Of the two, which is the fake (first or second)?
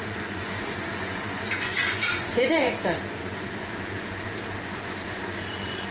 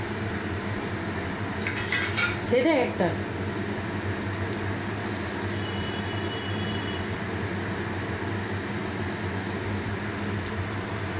first